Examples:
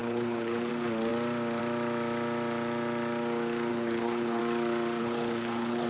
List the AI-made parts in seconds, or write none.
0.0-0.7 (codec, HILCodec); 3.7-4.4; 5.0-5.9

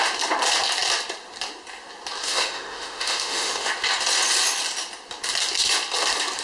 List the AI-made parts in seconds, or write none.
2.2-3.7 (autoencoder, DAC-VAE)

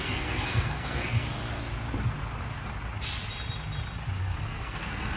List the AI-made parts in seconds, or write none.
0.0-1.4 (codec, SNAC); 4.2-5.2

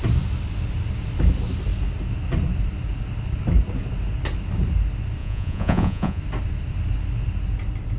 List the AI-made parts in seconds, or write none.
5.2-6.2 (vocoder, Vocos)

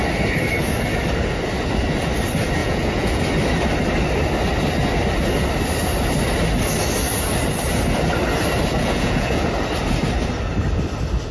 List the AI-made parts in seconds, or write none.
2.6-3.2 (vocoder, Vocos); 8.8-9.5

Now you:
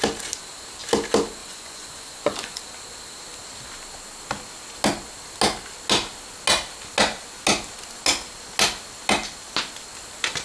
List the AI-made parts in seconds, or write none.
1.4-2.6 (vocoder, Vocos)

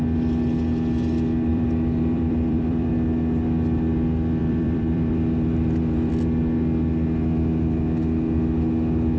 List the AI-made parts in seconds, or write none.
1.5-2.9 (vocoder, BigVGAN v2); 4.4-6.1

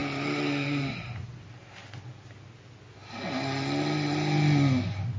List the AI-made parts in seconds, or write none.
none